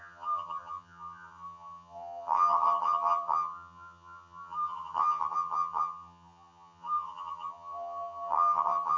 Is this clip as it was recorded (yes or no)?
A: no